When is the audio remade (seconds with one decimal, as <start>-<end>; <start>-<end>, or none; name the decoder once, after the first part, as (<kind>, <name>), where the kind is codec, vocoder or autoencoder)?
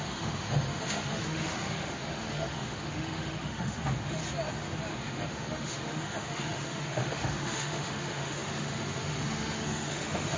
0.0-4.2 (autoencoder, DAC-VAE); 4.9-10.4